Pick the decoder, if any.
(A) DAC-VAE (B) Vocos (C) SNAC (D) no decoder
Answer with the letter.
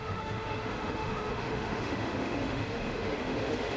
A